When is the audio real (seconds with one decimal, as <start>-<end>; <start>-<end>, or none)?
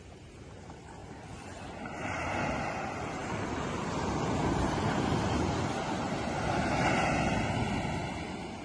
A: 0.0-8.6